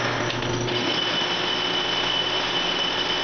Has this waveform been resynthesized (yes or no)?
no